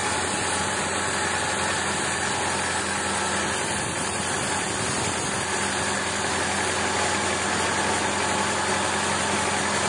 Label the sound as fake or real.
real